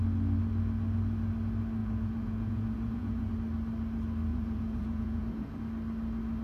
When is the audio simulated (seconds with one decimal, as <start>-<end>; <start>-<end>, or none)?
1.8-3.3; 4.3-5.6